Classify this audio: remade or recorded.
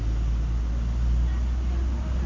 recorded